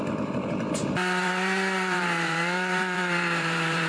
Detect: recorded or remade remade